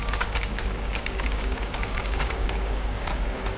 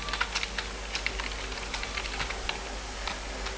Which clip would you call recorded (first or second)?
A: second